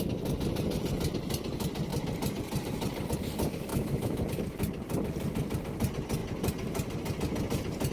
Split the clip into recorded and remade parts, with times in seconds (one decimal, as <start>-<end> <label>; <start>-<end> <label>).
0.0-3.7 recorded; 3.7-4.2 remade; 4.2-7.9 recorded